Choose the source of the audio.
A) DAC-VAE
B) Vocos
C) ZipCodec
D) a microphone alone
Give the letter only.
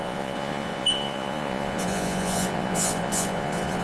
B